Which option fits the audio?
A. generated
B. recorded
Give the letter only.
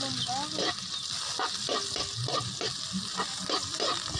B